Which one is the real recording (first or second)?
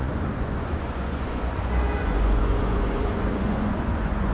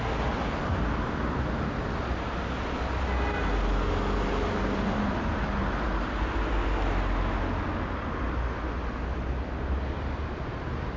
second